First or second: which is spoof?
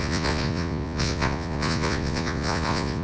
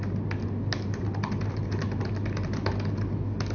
first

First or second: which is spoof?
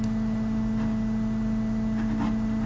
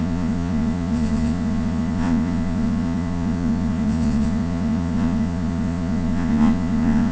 second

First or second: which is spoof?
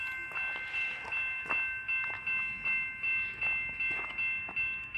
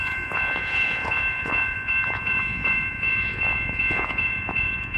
second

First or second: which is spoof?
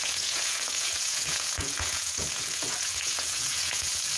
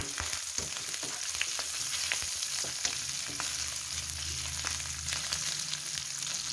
first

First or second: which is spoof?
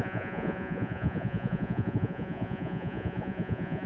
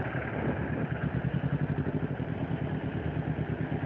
first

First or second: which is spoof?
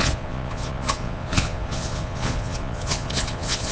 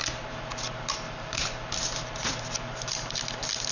first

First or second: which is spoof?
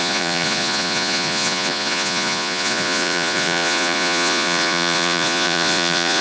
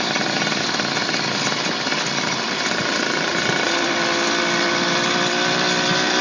first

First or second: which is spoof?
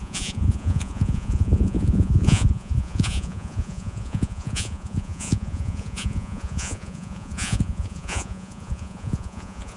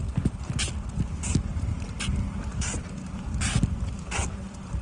first